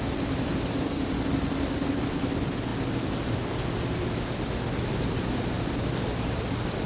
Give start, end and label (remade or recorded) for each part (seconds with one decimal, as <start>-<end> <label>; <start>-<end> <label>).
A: 0.0-6.9 recorded

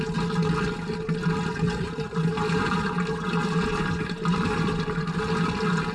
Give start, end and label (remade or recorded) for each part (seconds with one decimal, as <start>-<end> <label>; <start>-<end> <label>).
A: 0.0-1.7 recorded; 1.7-5.2 remade; 5.2-5.9 recorded

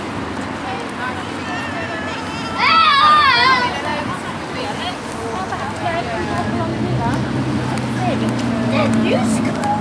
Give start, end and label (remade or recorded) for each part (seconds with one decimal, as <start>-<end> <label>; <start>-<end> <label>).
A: 0.0-9.8 recorded

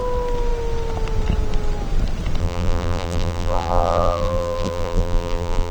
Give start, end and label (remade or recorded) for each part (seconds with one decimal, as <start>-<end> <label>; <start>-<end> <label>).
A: 0.0-2.4 recorded; 2.4-5.7 remade

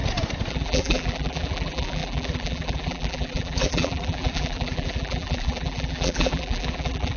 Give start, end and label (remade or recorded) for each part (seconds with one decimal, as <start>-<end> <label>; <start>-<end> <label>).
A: 0.0-0.5 recorded; 0.5-7.2 remade

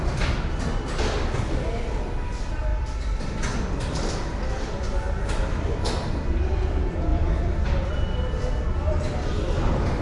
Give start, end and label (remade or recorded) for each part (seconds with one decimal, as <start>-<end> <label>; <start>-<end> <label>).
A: 0.0-7.1 recorded; 7.1-7.9 remade; 7.9-10.0 recorded